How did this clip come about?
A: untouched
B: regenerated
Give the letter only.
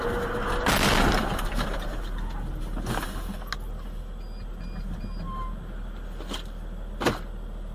A